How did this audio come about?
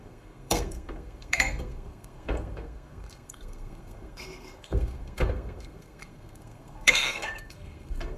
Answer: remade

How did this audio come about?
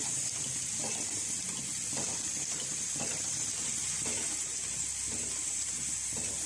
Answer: recorded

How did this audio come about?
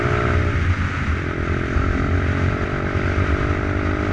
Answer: remade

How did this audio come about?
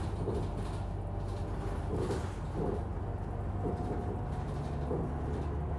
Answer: recorded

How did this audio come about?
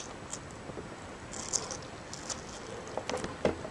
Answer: recorded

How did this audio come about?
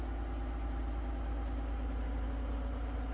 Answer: recorded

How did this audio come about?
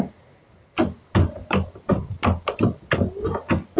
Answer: recorded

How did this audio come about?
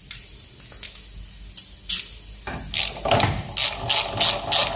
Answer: recorded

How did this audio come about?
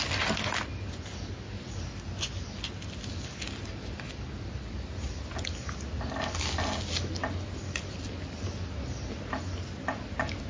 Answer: recorded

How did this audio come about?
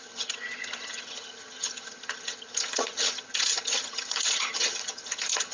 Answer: remade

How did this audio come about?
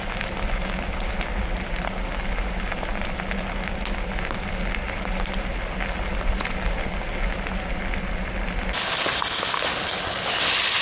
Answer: recorded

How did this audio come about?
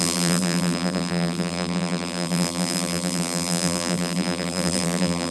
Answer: remade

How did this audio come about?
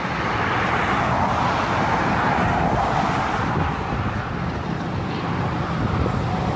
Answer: recorded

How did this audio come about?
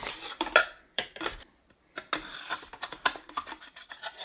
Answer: remade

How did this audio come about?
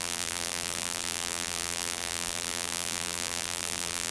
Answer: remade